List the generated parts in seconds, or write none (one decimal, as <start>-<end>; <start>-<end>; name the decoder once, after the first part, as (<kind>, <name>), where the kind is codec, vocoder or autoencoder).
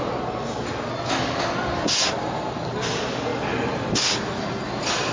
none